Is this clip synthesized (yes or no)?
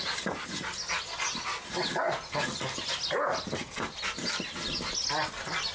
no